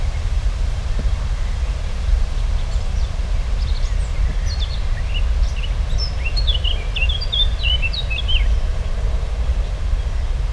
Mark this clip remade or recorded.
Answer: recorded